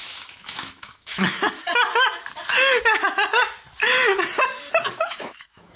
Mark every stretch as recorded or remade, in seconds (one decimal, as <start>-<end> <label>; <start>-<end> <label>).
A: 0.0-1.4 remade; 1.4-4.9 recorded; 4.9-5.8 remade